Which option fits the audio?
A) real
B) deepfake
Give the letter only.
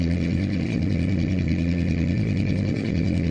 B